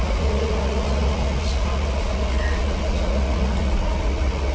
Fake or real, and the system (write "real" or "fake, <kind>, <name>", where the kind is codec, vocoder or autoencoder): fake, vocoder, Vocos